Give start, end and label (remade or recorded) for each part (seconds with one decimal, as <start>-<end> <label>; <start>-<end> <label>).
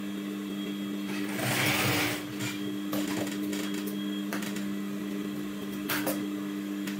0.0-7.0 recorded